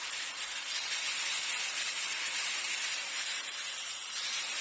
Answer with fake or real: real